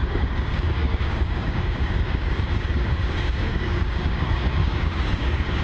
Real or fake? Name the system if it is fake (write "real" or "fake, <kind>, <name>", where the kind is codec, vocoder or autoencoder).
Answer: fake, codec, DAC